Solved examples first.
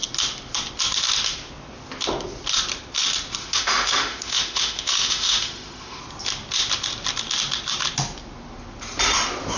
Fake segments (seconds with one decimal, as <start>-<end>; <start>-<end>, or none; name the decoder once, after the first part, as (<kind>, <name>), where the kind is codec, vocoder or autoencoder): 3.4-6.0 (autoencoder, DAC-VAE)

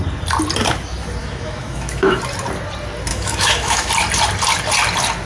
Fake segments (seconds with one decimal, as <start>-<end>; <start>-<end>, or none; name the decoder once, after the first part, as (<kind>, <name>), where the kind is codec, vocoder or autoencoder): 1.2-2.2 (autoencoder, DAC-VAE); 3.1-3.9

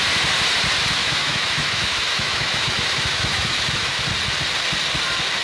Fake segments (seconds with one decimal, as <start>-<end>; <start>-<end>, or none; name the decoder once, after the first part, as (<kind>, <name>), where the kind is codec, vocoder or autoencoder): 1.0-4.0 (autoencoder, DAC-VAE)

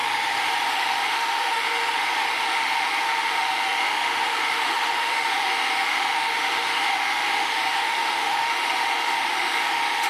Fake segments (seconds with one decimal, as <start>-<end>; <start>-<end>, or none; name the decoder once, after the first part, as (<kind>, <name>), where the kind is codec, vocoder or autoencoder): 0.0-10.1 (autoencoder, DAC-VAE)

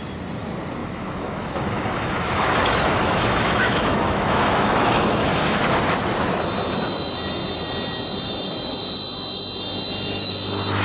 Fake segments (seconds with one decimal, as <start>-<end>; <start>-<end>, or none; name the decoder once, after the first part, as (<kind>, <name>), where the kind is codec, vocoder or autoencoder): 0.8-5.6 (autoencoder, DAC-VAE)

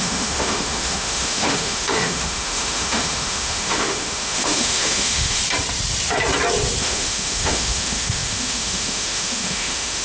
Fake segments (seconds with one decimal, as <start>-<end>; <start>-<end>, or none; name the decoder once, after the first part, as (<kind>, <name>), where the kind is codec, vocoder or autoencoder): 0.0-5.4 (autoencoder, DAC-VAE); 6.8-10.0

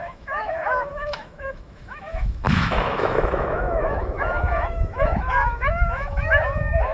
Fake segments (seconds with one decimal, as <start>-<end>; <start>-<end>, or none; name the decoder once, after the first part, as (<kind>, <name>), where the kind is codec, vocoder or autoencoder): 0.0-6.9 (autoencoder, DAC-VAE)

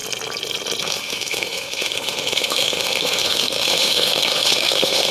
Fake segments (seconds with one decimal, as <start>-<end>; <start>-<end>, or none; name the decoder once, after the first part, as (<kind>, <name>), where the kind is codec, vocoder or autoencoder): 0.8-5.1 (autoencoder, DAC-VAE)